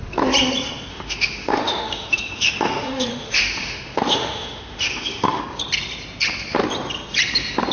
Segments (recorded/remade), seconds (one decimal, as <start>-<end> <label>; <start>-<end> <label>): 0.0-0.9 recorded; 0.9-5.4 remade; 5.4-7.7 recorded